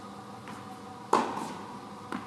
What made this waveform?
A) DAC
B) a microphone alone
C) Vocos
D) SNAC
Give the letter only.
B